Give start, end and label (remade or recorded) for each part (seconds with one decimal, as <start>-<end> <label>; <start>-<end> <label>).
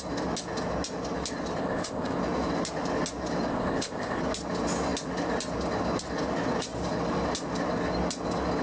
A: 0.0-1.6 recorded; 1.6-2.2 remade; 2.2-3.5 recorded; 3.5-4.2 remade; 4.2-8.6 recorded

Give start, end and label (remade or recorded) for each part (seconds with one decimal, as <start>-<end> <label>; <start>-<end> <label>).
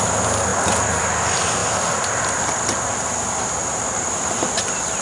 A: 0.0-5.0 recorded